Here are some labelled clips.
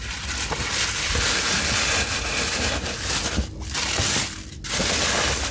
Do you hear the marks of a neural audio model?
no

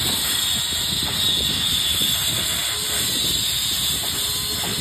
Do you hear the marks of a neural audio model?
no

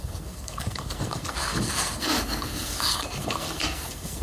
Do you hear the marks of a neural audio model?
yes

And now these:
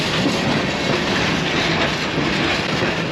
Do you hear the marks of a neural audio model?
no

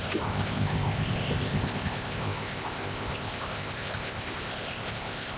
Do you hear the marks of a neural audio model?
yes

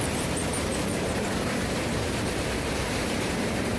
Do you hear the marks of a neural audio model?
yes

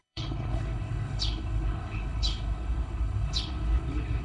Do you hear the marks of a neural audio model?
yes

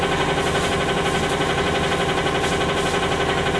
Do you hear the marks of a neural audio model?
no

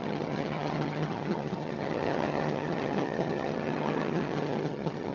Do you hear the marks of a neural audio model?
yes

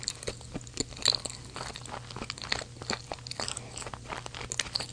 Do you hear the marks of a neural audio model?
no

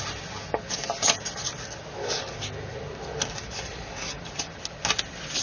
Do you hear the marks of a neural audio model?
no